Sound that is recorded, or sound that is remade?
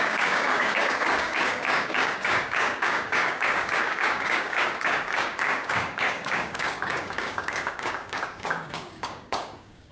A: remade